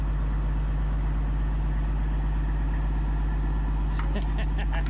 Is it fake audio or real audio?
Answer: real